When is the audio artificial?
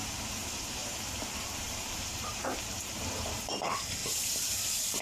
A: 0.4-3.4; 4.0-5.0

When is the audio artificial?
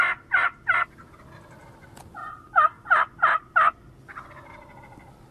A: 2.2-3.8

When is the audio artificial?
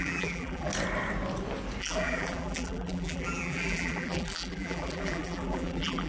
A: 0.0-0.7; 1.8-6.1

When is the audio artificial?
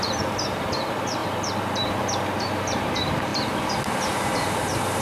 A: 0.0-5.0